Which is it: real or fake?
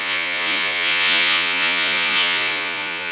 fake